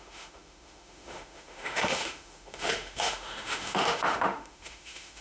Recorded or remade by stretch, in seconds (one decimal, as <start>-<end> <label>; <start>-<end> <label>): 0.0-5.2 remade